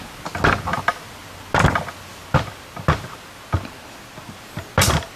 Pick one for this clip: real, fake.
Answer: real